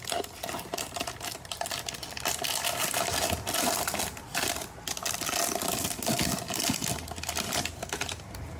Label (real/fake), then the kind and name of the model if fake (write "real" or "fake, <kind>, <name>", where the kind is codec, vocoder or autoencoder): real